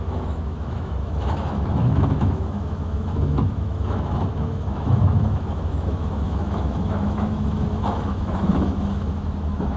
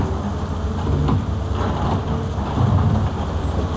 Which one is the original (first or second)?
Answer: second